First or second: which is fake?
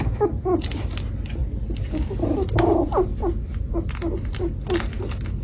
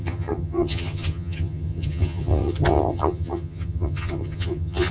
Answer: second